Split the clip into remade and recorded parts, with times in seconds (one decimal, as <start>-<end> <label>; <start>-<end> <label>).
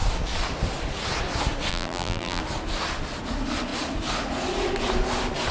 0.0-1.7 recorded; 1.7-2.4 remade; 2.4-5.5 recorded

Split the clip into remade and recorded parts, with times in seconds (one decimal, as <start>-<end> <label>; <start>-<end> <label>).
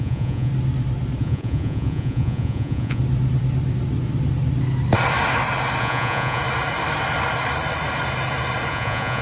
0.0-0.5 remade; 0.5-1.2 recorded; 1.2-3.0 remade; 3.0-5.8 recorded; 5.8-6.4 remade; 6.4-8.7 recorded; 8.7-9.2 remade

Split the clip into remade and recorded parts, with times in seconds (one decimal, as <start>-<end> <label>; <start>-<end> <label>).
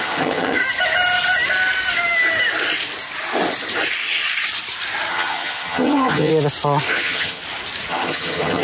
0.0-0.6 remade; 0.6-5.1 recorded; 5.1-6.3 remade; 6.3-6.9 recorded; 6.9-7.4 remade; 7.4-7.9 recorded; 7.9-8.6 remade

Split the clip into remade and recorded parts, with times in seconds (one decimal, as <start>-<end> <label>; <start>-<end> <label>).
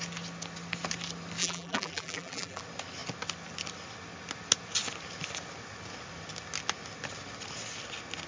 0.0-1.4 recorded; 1.4-2.6 remade; 2.6-8.3 recorded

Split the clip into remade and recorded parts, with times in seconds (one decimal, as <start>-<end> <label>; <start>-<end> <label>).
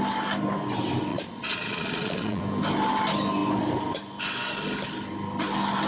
0.0-1.1 recorded; 1.1-2.4 remade; 2.4-5.9 recorded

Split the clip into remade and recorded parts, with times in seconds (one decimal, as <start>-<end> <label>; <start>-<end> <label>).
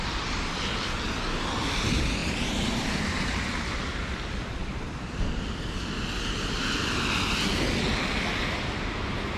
0.0-2.2 recorded; 2.2-3.6 remade; 3.6-9.4 recorded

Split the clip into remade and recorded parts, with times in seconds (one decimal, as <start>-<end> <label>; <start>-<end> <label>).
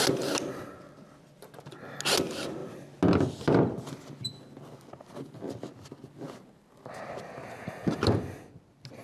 0.0-9.0 recorded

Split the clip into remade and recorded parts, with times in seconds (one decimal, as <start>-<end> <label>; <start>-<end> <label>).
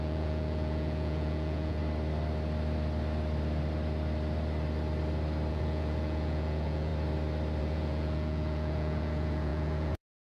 0.0-1.8 remade; 1.8-5.5 recorded; 5.5-6.9 remade; 6.9-7.6 recorded; 7.6-10.2 remade